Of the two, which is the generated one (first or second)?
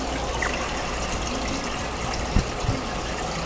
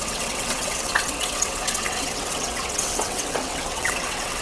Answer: second